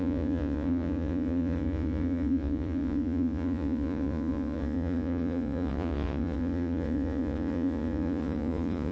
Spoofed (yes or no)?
yes